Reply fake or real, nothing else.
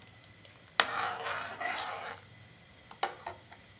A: real